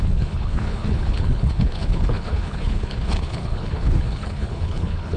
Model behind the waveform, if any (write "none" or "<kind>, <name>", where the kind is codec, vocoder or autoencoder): codec, HILCodec